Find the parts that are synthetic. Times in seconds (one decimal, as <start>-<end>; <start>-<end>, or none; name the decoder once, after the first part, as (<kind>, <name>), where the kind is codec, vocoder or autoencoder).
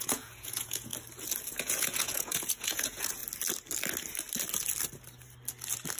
0.0-0.9 (vocoder, Vocos); 1.5-3.2